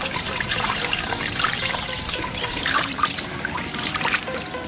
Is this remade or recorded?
remade